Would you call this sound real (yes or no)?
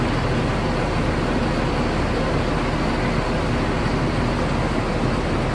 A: yes